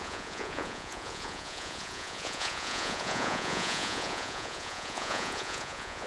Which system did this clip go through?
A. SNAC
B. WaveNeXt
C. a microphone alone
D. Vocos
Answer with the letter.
D